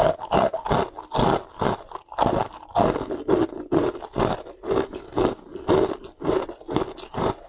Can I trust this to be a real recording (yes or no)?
yes